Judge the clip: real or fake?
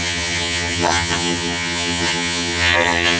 fake